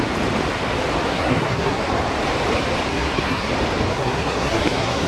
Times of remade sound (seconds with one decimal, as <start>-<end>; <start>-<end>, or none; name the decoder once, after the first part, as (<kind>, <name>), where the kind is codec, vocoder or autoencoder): 1.1-1.8 (codec, SNAC); 2.9-3.5; 3.9-5.1